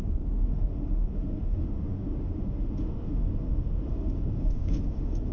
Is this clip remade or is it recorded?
remade